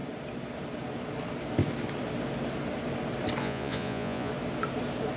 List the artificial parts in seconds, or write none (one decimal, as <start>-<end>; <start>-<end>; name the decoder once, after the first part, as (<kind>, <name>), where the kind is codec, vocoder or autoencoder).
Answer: 3.4-4.3 (vocoder, Vocos)